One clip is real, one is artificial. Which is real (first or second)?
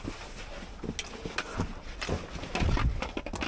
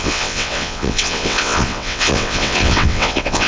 first